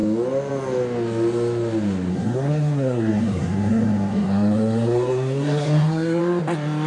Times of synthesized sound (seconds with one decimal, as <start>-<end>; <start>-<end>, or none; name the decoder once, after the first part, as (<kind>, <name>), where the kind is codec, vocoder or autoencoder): 2.1-6.2 (codec, SNAC)